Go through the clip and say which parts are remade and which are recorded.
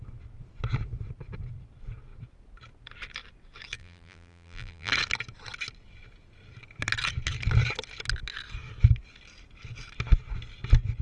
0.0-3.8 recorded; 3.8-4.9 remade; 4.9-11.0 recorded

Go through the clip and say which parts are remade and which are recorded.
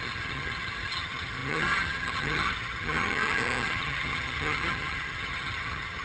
0.0-6.0 remade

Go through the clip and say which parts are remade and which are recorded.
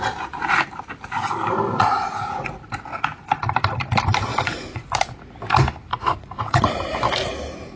0.0-1.8 recorded; 1.8-2.5 remade; 2.5-4.3 recorded; 4.3-4.9 remade; 4.9-5.9 recorded; 5.9-6.7 remade; 6.7-7.8 recorded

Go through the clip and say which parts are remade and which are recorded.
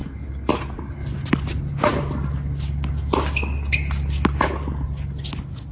0.0-0.5 remade; 0.5-5.7 recorded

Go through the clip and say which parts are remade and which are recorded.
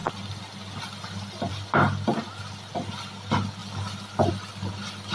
0.0-5.1 recorded